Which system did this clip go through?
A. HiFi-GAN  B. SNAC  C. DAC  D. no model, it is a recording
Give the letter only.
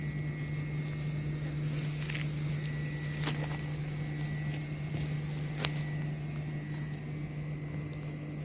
D